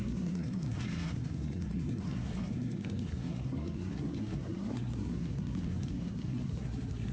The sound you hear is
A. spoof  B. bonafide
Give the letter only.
A